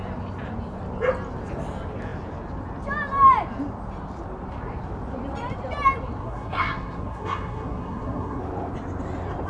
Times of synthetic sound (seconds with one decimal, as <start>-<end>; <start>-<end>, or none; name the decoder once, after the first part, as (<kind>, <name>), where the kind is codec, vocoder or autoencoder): 6.2-8.4 (codec, SNAC)